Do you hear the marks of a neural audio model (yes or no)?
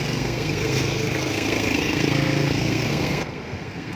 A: yes